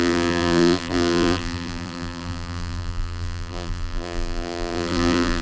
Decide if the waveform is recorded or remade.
remade